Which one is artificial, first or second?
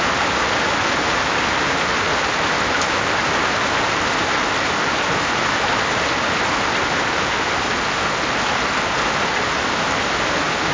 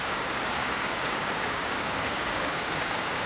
second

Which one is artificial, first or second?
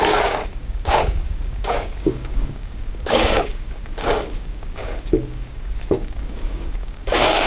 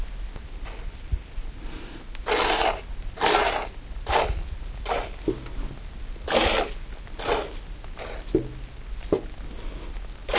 first